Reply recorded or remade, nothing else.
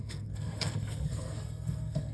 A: remade